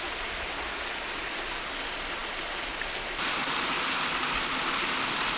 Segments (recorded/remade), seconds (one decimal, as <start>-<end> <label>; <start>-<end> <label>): 0.0-5.4 recorded